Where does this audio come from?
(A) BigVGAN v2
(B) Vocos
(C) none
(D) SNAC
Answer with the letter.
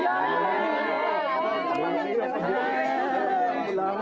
C